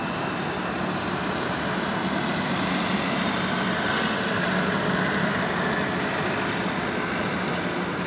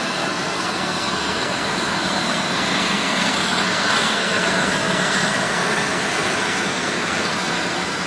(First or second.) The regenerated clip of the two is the second